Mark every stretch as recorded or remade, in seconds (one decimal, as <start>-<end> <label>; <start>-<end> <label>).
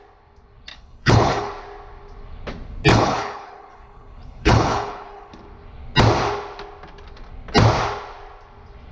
0.0-0.7 recorded; 0.7-1.5 remade; 1.5-2.9 recorded; 2.9-5.3 remade; 5.3-8.9 recorded